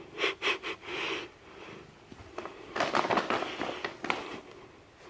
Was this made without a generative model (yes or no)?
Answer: yes